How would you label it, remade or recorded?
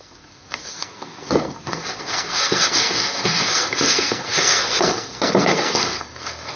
remade